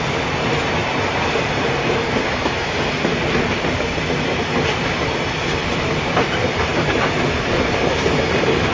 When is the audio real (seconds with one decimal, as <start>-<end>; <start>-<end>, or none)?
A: 0.0-8.7